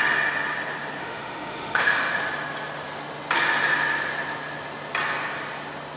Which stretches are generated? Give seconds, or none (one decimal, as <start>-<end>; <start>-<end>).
1.0-2.2